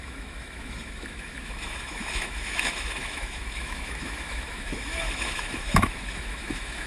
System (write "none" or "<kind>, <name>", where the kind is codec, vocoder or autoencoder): autoencoder, DAC-VAE